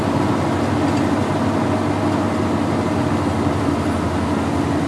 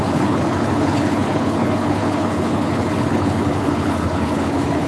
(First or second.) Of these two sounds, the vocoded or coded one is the second